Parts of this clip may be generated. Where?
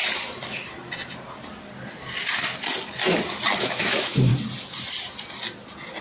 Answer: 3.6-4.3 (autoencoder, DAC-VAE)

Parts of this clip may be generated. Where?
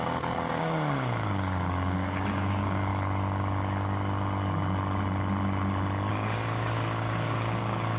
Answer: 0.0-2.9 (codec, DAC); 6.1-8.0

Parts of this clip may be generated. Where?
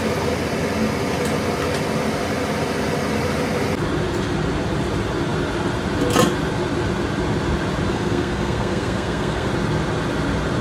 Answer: 7.9-9.5 (codec, SNAC)